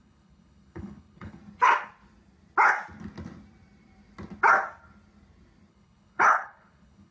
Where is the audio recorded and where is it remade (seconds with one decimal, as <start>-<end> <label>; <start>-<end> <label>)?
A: 0.0-1.4 remade; 1.4-5.7 recorded; 5.7-7.1 remade